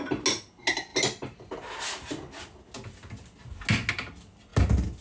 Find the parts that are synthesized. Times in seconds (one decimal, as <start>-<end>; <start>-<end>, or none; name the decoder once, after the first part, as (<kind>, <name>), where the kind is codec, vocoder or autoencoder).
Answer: none